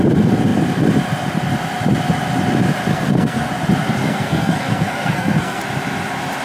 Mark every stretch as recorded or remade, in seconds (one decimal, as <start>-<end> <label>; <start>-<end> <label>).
0.0-2.9 recorded; 2.9-3.5 remade; 3.5-4.0 recorded; 4.0-5.6 remade; 5.6-6.4 recorded